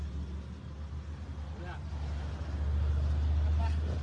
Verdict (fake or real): real